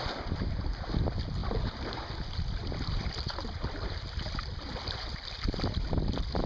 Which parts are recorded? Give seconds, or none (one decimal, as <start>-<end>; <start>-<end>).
0.0-6.5